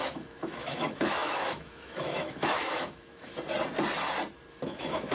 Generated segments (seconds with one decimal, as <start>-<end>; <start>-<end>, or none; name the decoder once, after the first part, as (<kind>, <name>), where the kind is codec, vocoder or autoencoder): 0.0-3.3 (autoencoder, DAC-VAE); 4.5-5.1